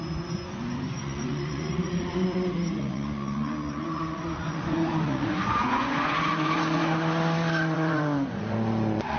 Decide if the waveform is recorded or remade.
remade